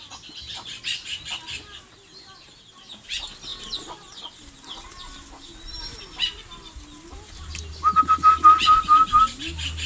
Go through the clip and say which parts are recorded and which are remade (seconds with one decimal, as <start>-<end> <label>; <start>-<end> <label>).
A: 0.0-9.9 recorded

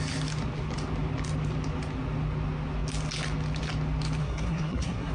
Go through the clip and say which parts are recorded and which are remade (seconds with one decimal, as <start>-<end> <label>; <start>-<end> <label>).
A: 0.0-4.2 recorded; 4.2-5.1 remade

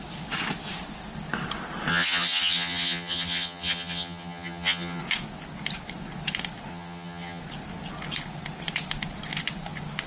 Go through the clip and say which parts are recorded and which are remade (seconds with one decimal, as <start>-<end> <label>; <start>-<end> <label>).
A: 0.0-1.9 recorded; 1.9-5.0 remade; 5.0-6.7 recorded; 6.7-7.4 remade; 7.4-10.1 recorded

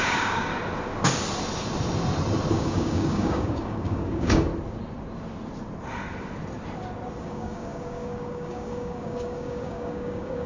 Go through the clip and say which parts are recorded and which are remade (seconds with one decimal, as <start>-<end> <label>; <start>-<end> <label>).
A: 0.0-0.5 remade; 0.5-2.5 recorded; 2.5-4.5 remade; 4.5-7.2 recorded; 7.2-10.5 remade

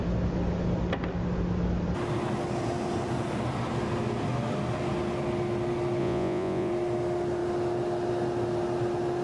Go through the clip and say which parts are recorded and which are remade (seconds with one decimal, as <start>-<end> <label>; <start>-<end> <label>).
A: 0.0-6.0 recorded; 6.0-6.7 remade; 6.7-9.2 recorded

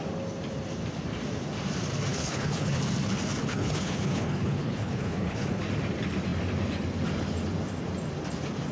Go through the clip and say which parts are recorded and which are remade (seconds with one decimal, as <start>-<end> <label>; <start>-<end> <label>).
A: 0.0-2.1 recorded; 2.1-2.8 remade; 2.8-3.4 recorded; 3.4-5.6 remade; 5.6-8.7 recorded